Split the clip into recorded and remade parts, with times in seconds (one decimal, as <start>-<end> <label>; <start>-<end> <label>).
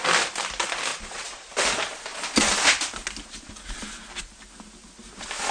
0.0-0.9 recorded; 0.9-1.5 remade; 1.5-5.5 recorded